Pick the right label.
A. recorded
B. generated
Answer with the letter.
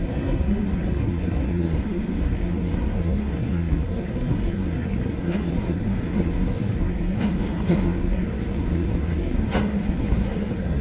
B